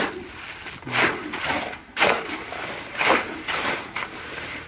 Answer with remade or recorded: recorded